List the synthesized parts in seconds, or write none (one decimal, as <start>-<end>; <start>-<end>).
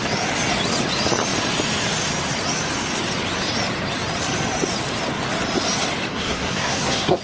6.1-7.2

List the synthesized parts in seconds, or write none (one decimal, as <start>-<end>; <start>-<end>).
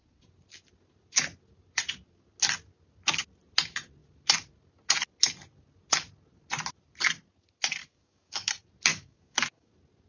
7.8-8.5; 8.9-9.7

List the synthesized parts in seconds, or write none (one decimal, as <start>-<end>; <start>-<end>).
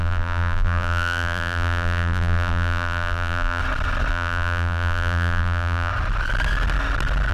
0.0-3.6; 4.1-5.9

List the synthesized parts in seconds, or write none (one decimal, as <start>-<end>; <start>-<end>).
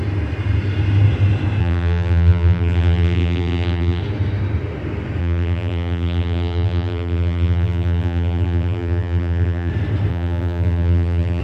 1.6-4.0; 5.2-9.7; 10.1-11.4